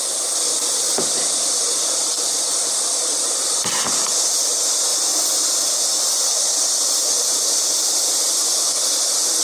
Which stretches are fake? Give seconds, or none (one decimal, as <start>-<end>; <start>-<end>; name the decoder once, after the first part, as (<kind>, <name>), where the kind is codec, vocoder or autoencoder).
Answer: 0.0-9.4 (vocoder, BigVGAN v2)